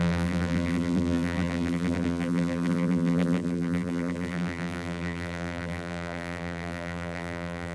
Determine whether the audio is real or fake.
fake